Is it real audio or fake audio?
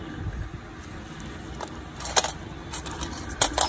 real